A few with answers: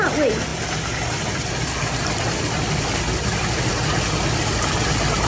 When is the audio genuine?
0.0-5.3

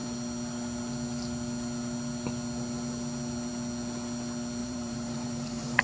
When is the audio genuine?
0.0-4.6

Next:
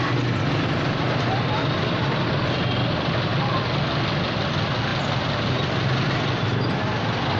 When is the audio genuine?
0.0-7.4